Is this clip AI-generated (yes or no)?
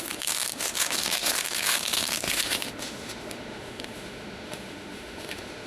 yes